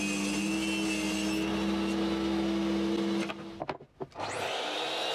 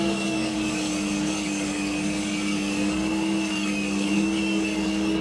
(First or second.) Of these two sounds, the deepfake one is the second